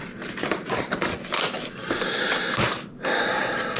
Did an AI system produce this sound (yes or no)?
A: no